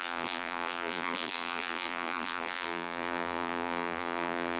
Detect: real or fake fake